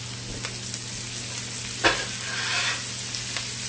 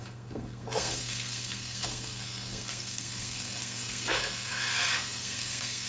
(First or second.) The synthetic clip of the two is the second